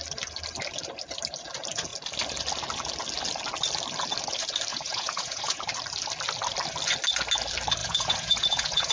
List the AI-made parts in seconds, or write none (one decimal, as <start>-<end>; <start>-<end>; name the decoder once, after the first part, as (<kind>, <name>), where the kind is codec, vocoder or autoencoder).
4.7-5.6 (vocoder, Vocos); 7.8-8.9